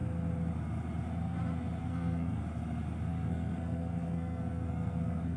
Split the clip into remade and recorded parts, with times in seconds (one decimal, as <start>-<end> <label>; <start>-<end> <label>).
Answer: 0.0-1.8 recorded; 1.8-2.4 remade; 2.4-3.1 recorded; 3.1-5.4 remade